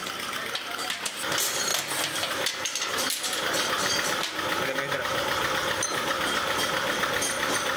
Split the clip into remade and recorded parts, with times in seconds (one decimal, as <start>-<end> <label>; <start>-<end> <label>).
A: 0.0-0.5 recorded; 0.5-1.7 remade; 1.7-2.5 recorded; 2.5-7.8 remade